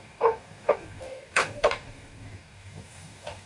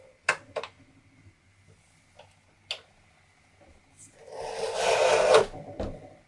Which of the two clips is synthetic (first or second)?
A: first